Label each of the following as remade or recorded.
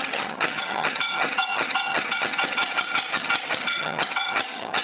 remade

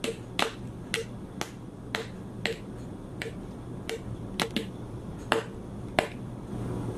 recorded